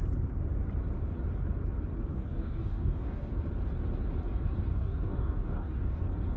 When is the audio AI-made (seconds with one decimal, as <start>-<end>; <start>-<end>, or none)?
2.1-3.3; 4.7-6.0